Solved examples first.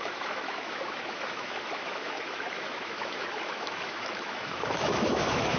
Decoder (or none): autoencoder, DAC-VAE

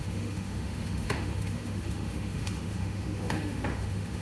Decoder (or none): autoencoder, DAC-VAE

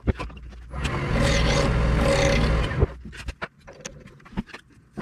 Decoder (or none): none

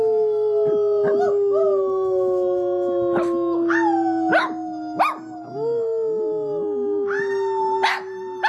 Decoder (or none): none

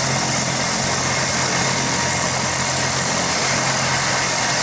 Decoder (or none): none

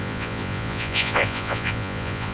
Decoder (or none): vocoder, Vocos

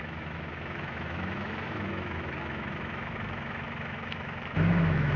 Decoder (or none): autoencoder, DAC-VAE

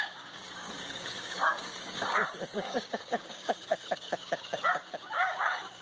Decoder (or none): codec, DAC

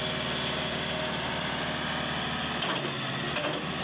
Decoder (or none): none